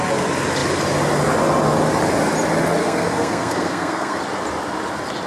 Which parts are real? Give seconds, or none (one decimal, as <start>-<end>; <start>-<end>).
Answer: 0.0-2.8; 4.2-5.3